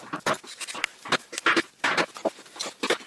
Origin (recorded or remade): recorded